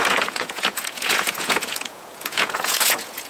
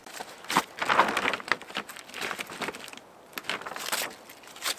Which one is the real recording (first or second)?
second